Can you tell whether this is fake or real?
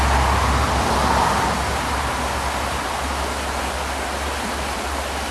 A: real